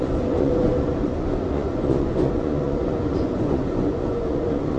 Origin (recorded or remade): remade